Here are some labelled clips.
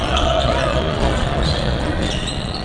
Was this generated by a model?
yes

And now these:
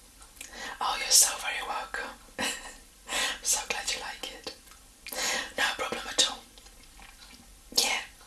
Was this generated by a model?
no